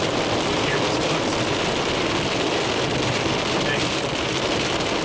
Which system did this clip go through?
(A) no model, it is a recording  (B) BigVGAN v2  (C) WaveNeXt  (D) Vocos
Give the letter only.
B